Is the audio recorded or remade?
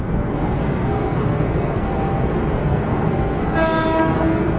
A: remade